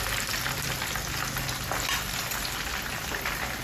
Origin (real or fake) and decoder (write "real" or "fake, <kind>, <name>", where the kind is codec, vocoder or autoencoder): real